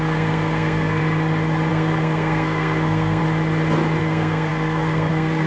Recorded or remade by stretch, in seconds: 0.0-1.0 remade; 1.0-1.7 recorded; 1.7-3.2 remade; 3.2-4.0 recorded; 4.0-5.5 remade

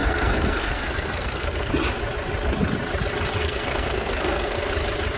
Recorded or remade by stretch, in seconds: 0.0-1.7 remade; 1.7-3.4 recorded; 3.4-4.7 remade; 4.7-5.2 recorded

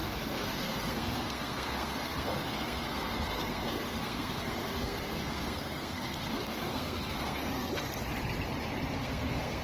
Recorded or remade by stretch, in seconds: 0.0-7.7 remade; 7.7-9.0 recorded; 9.0-9.6 remade